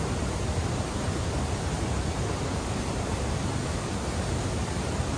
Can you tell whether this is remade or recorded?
recorded